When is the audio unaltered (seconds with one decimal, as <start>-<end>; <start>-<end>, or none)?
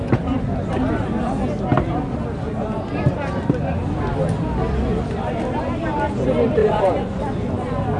0.0-6.6; 7.2-8.0